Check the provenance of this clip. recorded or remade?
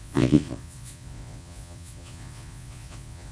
remade